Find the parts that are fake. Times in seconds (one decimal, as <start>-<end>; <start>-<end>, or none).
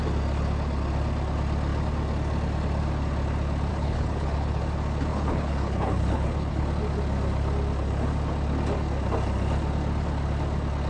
3.7-4.6; 5.1-6.7